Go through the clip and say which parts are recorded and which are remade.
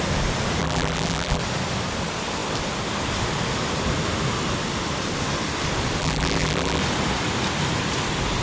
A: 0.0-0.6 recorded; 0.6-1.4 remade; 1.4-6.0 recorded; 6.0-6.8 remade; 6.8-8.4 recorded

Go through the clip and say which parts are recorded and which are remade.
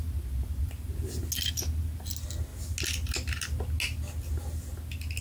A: 0.0-5.2 recorded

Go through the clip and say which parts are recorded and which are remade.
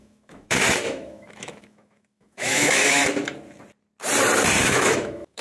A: 0.0-3.0 remade; 3.0-4.6 recorded; 4.6-5.4 remade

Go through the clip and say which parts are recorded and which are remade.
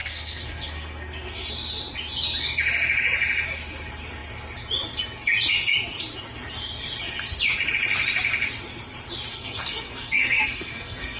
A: 0.0-1.5 remade; 1.5-9.3 recorded; 9.3-11.2 remade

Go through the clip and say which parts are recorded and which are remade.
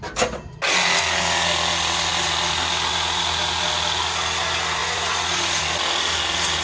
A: 0.0-4.8 recorded; 4.8-5.6 remade; 5.6-6.6 recorded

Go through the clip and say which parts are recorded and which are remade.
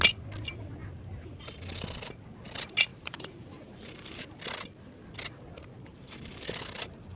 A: 0.0-0.8 recorded; 0.8-1.4 remade; 1.4-2.9 recorded; 2.9-4.4 remade; 4.4-5.9 recorded; 5.9-6.4 remade; 6.4-7.2 recorded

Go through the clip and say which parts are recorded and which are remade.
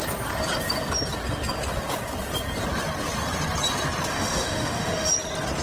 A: 0.0-4.1 recorded; 4.1-5.1 remade; 5.1-5.6 recorded